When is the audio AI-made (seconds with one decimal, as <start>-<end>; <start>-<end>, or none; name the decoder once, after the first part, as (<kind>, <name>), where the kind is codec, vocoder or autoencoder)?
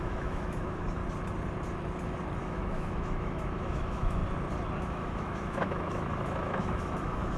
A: 0.0-1.0 (autoencoder, DAC-VAE); 2.4-4.2; 4.8-7.4